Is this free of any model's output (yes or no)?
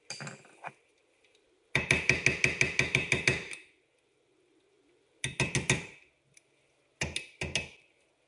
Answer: yes